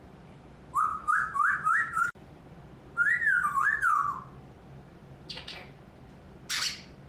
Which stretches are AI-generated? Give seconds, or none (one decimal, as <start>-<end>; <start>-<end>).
0.9-2.3